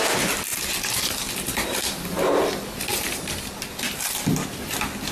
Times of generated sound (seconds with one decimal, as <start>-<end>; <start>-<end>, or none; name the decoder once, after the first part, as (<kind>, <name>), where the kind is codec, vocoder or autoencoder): none